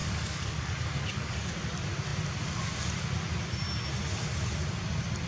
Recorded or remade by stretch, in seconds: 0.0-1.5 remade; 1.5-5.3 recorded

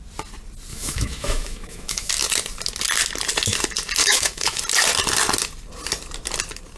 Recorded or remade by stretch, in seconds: 0.0-0.7 recorded; 0.7-2.1 remade; 2.1-4.0 recorded; 4.0-4.6 remade; 4.6-6.8 recorded

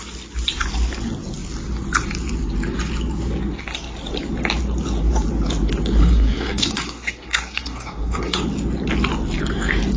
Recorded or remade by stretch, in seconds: 0.0-6.0 recorded; 6.0-8.4 remade; 8.4-10.0 recorded

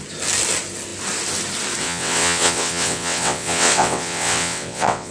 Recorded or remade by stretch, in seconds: 0.0-1.8 recorded; 1.8-5.1 remade